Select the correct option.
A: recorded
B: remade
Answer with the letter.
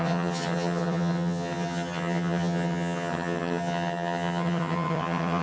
B